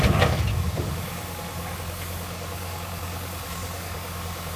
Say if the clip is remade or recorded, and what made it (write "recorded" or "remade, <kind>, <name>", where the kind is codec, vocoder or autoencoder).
remade, codec, DAC